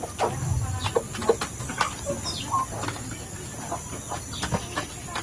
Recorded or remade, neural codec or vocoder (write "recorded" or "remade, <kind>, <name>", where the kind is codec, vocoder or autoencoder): recorded